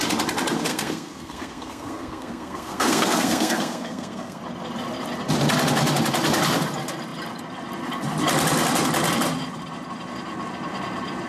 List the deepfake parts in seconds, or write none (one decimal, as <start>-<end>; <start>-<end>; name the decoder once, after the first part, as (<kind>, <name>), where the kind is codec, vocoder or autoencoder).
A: 0.7-4.4 (codec, SNAC)